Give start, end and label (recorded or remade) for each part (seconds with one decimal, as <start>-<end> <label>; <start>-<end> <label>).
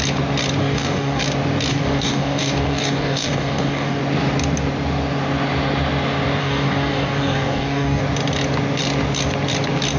0.0-0.6 recorded; 0.6-1.2 remade; 1.2-1.7 recorded; 1.7-4.0 remade; 4.0-6.4 recorded; 6.4-8.0 remade; 8.0-10.0 recorded